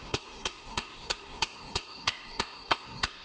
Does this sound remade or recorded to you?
remade